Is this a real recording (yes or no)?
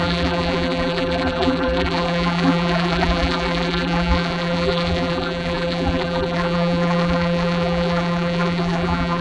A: no